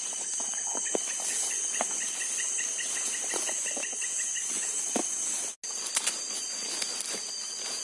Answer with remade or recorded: recorded